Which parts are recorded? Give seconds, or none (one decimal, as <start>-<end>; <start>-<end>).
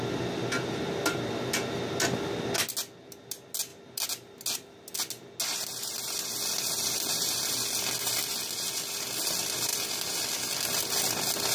0.0-11.5